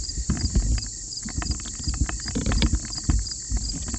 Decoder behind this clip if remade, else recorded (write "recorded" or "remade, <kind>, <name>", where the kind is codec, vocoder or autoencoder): recorded